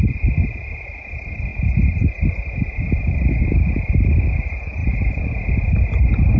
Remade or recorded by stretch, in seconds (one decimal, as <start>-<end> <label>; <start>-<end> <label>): 0.0-6.4 recorded